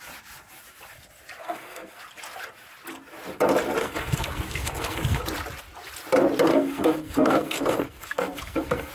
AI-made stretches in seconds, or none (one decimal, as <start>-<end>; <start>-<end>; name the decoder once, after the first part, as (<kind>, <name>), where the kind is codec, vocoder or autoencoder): 1.4-2.0 (codec, SNAC); 3.8-5.2; 6.5-8.9